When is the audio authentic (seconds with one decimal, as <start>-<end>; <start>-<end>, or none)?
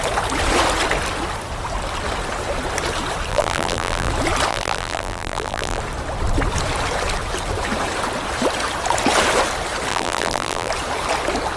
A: 0.0-3.3; 4.1-4.5; 5.8-9.9; 10.7-11.6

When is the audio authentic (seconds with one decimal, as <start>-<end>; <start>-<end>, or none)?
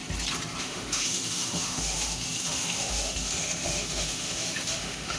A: 0.0-0.6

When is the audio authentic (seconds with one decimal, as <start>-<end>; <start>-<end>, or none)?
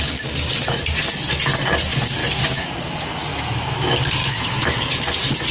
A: 0.0-2.2; 2.7-3.3; 3.8-4.2; 4.9-5.5